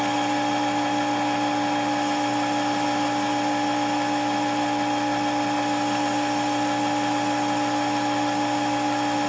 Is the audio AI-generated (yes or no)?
no